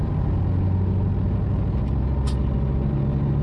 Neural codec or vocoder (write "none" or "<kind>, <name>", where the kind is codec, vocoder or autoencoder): none